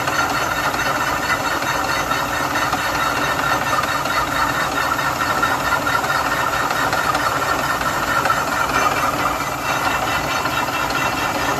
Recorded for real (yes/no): yes